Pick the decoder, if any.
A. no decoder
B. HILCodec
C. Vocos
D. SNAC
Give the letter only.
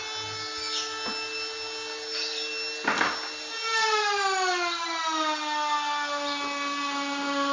A